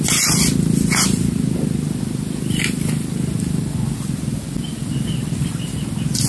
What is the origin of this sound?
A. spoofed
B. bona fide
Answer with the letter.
B